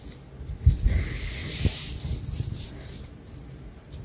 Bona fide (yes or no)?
no